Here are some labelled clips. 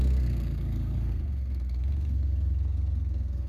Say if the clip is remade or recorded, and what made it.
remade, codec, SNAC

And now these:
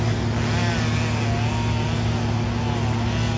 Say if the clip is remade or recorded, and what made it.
recorded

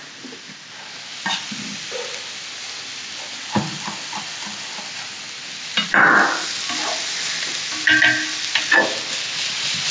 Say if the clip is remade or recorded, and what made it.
recorded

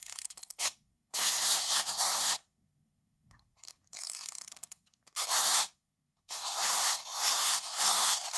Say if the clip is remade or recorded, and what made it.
remade, codec, SNAC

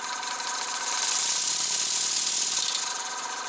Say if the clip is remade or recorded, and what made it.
recorded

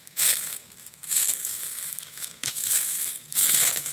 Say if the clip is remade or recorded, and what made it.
remade, codec, SNAC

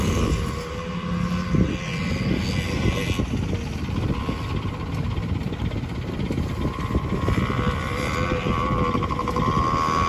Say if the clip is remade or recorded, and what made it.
recorded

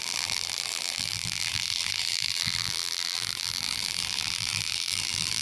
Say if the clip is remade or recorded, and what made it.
remade, vocoder, BigVGAN v2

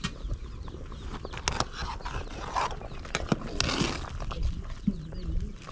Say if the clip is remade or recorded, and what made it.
recorded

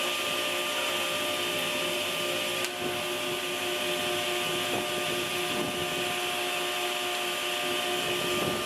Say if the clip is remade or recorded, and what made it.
recorded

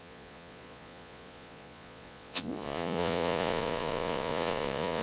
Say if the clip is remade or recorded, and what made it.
remade, vocoder, Vocos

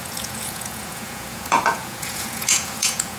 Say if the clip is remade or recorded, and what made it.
remade, vocoder, Vocos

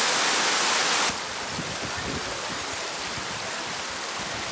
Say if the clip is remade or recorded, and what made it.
recorded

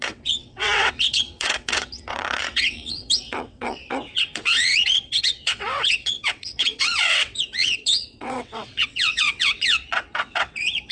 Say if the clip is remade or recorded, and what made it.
remade, vocoder, WaveNeXt